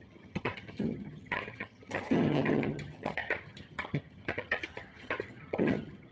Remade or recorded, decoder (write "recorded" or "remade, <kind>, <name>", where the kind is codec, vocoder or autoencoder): remade, vocoder, HiFi-GAN